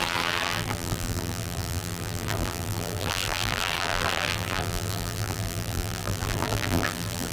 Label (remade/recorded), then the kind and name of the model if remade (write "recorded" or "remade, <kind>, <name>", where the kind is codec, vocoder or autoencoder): remade, vocoder, BigVGAN v2